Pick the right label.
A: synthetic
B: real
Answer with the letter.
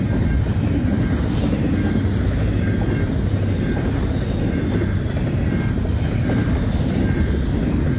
B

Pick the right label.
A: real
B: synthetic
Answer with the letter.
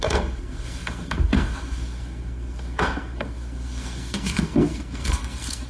B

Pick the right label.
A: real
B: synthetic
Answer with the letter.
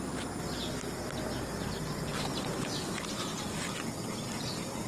A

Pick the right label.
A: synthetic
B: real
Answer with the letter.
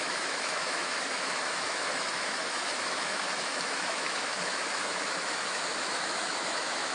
A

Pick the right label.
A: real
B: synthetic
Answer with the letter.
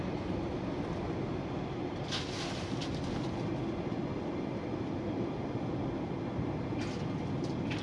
A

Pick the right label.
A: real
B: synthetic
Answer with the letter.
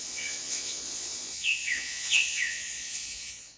B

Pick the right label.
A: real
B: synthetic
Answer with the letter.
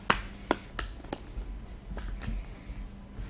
A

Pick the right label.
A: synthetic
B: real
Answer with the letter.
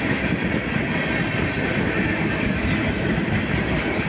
B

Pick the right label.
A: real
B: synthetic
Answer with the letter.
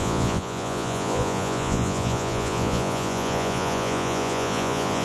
B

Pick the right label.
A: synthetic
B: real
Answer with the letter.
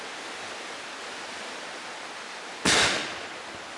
B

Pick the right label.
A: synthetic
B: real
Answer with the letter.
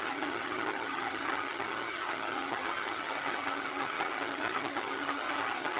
A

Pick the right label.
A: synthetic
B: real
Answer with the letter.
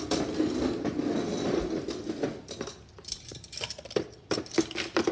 B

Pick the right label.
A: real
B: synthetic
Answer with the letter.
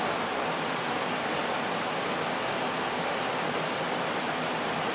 B